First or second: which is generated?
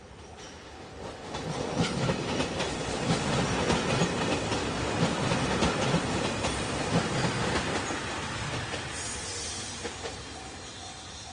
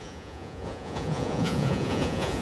second